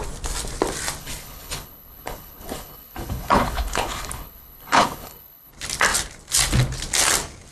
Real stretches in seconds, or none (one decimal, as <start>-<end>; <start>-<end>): 0.0-1.0; 5.5-7.5